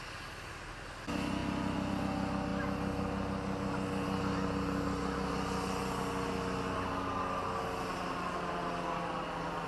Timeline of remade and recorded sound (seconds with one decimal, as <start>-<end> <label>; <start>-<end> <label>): 0.0-9.7 recorded